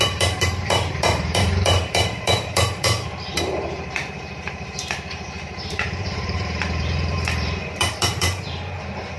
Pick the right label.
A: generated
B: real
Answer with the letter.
A